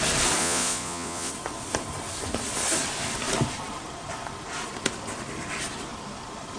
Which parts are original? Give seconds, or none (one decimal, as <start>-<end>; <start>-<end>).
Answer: 0.0-0.4; 1.3-6.6